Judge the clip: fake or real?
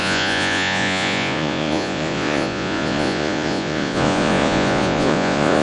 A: fake